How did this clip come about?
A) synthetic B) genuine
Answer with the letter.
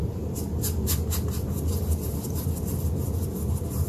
B